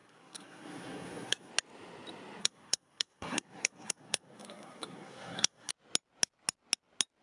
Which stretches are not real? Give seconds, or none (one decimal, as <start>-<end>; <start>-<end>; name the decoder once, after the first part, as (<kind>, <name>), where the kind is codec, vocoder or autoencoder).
0.0-1.5 (codec, SNAC); 2.4-5.7